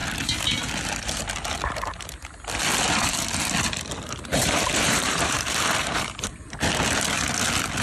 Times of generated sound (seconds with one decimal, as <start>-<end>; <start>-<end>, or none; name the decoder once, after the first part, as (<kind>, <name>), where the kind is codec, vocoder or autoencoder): 4.3-6.0 (vocoder, BigVGAN v2)